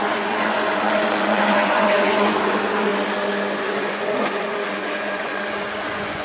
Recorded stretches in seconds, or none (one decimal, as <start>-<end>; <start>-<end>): 2.9-3.6